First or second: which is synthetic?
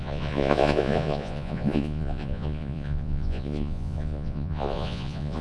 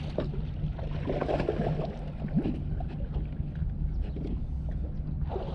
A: first